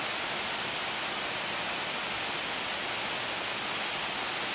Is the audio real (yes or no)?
yes